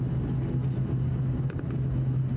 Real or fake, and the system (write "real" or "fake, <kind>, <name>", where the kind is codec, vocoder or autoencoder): real